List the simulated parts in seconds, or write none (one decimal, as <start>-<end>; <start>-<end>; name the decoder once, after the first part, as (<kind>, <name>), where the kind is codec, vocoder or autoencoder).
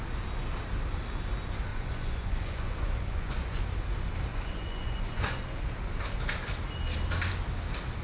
1.7-3.6 (vocoder, Vocos); 4.3-5.4